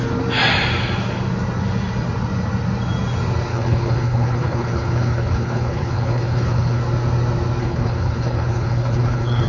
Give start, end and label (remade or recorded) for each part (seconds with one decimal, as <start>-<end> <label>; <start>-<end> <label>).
0.0-3.5 recorded; 3.5-6.8 remade; 6.8-7.6 recorded; 7.6-9.5 remade